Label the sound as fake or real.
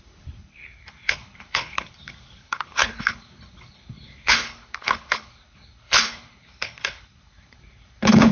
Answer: fake